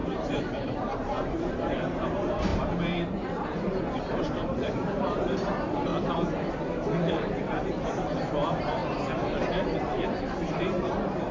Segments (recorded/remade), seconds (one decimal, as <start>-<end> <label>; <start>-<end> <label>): 0.0-5.9 remade; 5.9-7.1 recorded; 7.1-8.8 remade; 8.8-9.5 recorded; 9.5-11.3 remade